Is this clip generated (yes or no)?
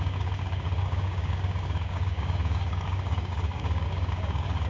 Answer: yes